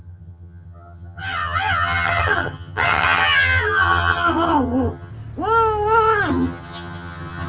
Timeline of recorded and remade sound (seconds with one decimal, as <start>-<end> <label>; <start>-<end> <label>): 0.0-5.1 remade; 5.1-6.3 recorded; 6.3-7.5 remade